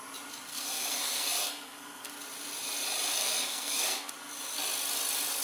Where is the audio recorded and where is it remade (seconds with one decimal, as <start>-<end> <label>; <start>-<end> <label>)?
0.0-0.5 recorded; 0.5-2.1 remade; 2.1-3.2 recorded; 3.2-4.1 remade; 4.1-5.4 recorded